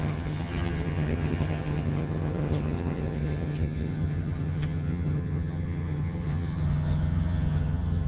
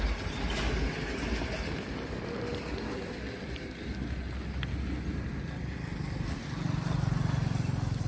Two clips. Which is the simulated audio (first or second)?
first